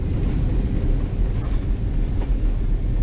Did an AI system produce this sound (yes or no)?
no